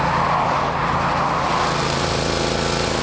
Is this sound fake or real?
real